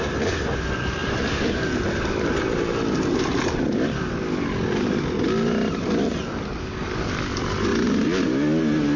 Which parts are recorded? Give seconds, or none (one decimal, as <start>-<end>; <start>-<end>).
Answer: 0.0-9.0